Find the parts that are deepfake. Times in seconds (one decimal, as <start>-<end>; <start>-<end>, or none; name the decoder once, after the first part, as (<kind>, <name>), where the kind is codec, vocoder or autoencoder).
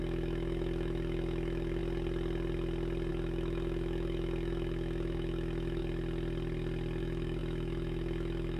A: 0.0-1.8 (autoencoder, DAC-VAE); 3.1-5.8; 7.0-8.6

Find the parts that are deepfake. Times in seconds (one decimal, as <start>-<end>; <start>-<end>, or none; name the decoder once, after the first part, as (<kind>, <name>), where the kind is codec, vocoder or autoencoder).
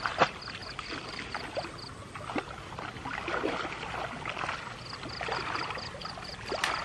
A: none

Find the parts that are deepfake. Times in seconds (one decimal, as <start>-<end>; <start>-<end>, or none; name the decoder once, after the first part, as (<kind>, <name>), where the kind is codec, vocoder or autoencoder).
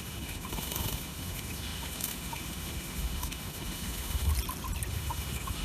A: 0.0-4.3 (autoencoder, DAC-VAE); 4.9-5.6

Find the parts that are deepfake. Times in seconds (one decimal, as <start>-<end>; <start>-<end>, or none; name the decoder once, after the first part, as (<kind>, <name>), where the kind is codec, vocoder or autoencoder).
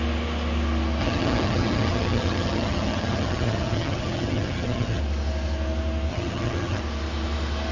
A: 1.0-5.0 (vocoder, HiFi-GAN); 6.1-6.8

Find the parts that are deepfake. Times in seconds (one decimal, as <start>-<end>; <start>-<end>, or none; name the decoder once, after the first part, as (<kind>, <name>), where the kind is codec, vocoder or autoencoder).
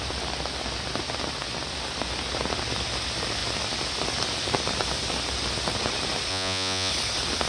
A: 6.3-6.9 (vocoder, Vocos)